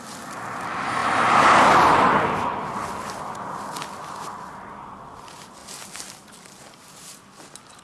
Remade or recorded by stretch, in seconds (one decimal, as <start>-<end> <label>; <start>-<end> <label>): 0.0-7.8 recorded